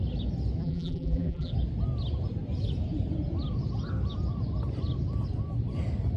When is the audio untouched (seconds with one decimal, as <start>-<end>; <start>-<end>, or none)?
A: 0.0-0.6; 1.5-6.2